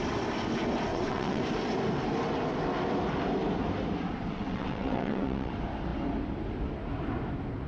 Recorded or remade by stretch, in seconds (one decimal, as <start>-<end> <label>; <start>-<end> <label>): 0.0-0.9 recorded; 0.9-1.4 remade; 1.4-4.3 recorded; 4.3-5.5 remade; 5.5-7.7 recorded